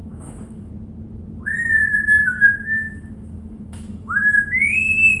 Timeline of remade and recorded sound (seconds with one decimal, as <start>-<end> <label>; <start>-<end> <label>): 0.0-0.7 remade; 0.7-1.8 recorded; 1.8-5.2 remade